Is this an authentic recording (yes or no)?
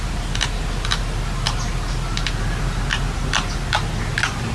yes